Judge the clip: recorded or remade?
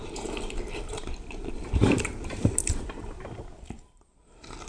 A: remade